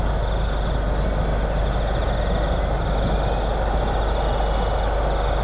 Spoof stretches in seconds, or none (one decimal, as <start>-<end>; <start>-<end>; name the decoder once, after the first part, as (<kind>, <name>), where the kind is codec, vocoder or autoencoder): none